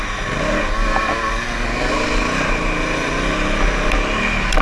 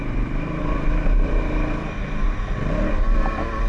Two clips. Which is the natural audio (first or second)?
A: first